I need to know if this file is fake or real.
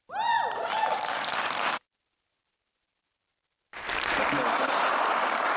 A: fake